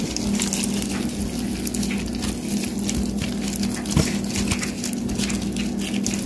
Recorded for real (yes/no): yes